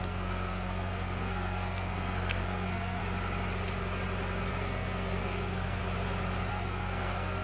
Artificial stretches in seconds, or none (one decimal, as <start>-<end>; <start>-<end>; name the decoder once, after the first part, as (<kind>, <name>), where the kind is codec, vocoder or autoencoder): 0.0-3.0 (codec, SNAC); 4.5-5.8; 6.5-7.4